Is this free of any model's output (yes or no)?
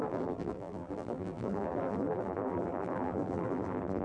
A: no